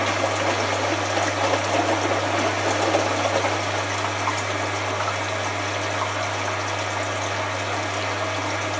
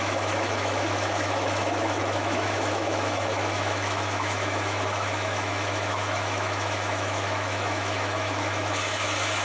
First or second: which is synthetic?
second